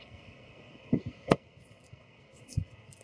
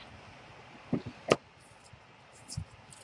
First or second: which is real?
second